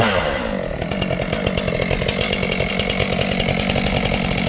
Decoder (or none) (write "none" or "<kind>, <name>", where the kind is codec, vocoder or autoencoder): none